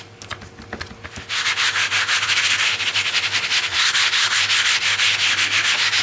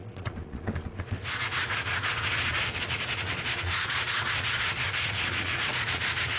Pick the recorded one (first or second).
first